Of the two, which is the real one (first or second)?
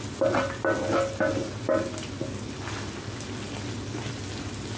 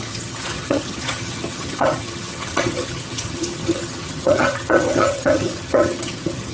first